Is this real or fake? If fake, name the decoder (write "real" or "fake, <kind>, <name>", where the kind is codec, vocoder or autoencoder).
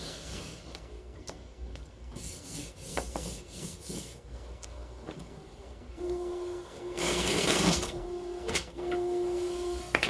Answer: fake, codec, SNAC